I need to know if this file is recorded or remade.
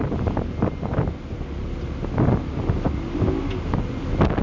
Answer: recorded